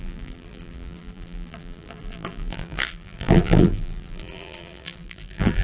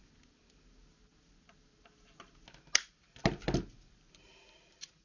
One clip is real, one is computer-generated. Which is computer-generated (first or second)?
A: first